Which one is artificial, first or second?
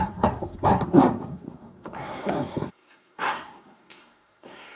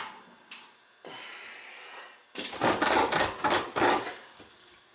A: first